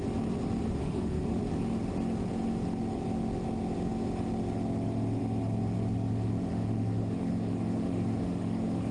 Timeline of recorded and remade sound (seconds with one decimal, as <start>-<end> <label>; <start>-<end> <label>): 0.0-0.8 recorded; 0.8-1.4 remade; 1.4-6.5 recorded; 6.5-8.9 remade